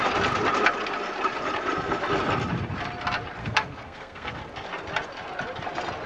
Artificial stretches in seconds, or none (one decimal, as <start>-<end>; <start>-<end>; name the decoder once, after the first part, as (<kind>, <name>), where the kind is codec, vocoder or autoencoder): 3.4-4.4 (codec, SNAC)